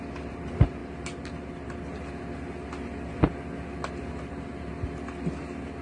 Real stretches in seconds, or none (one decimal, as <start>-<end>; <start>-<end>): 0.0-5.8